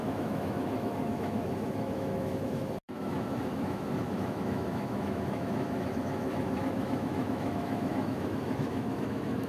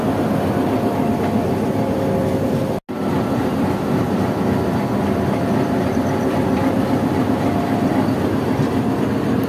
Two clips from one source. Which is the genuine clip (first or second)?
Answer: second